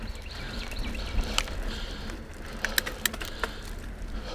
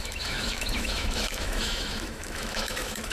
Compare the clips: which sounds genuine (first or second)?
first